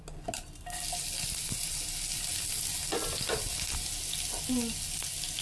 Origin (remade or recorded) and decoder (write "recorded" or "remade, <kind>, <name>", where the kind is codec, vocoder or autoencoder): recorded